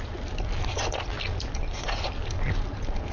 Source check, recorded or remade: recorded